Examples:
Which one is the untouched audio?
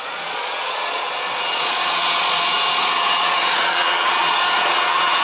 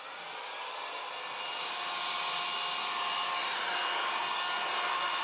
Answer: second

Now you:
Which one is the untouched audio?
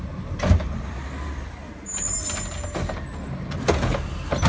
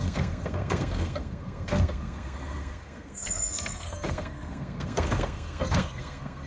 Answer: first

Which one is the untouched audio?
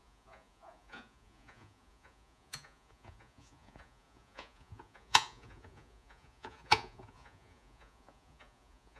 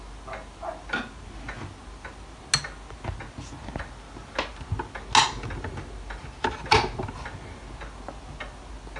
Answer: second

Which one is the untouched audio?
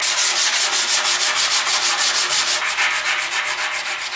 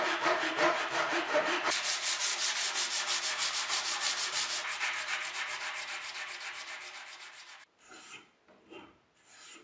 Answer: first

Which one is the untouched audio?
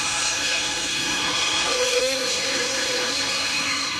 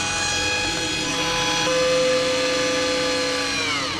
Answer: second